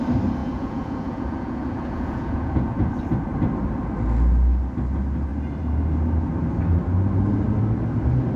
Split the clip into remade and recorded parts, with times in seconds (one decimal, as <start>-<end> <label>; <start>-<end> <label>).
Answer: 0.0-0.4 recorded; 0.4-2.9 remade; 2.9-8.4 recorded

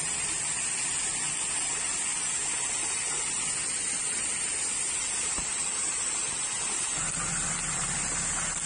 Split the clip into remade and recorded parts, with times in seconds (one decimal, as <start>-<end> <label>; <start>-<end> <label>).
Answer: 0.0-8.7 recorded

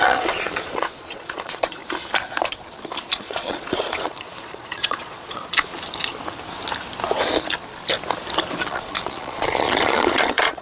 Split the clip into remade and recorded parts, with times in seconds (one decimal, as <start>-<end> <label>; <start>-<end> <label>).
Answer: 0.0-1.8 remade; 1.8-3.1 recorded; 3.1-5.4 remade; 5.4-8.6 recorded; 8.6-10.6 remade